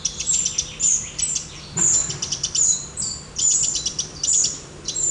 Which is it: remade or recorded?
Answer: remade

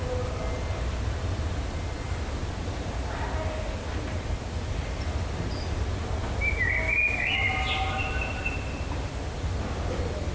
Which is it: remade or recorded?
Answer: recorded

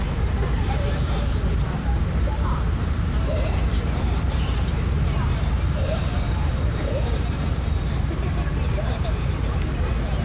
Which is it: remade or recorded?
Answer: remade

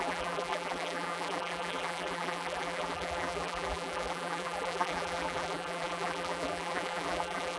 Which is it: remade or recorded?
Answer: remade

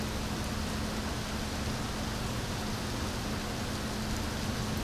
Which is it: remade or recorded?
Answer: recorded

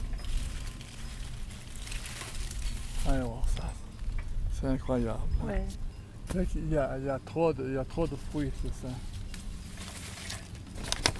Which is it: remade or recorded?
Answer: recorded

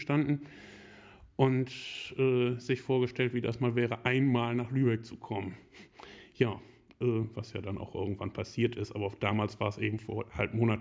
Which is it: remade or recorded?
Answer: recorded